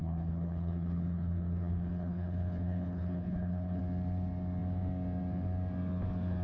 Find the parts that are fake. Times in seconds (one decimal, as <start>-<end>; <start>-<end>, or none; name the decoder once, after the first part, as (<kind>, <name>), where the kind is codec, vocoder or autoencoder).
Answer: 0.0-3.8 (codec, HILCodec)